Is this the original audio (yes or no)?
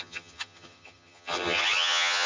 no